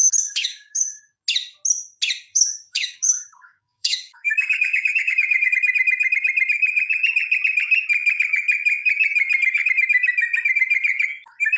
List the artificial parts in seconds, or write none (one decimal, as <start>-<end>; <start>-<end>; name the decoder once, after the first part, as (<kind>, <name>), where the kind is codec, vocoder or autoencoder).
0.0-1.0 (codec, DAC); 2.3-5.5